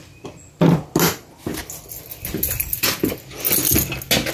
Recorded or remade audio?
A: recorded